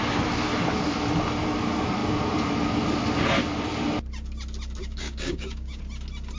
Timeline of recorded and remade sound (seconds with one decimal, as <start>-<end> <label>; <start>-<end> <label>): 0.0-4.8 recorded; 4.8-5.8 remade; 5.8-6.4 recorded